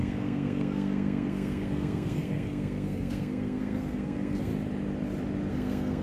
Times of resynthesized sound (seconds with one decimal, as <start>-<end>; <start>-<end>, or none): 0.0-4.5; 5.5-6.0